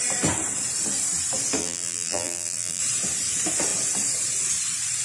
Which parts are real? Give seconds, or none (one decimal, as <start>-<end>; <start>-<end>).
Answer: 0.0-1.6; 2.8-5.0